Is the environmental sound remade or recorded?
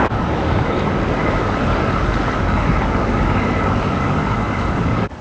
remade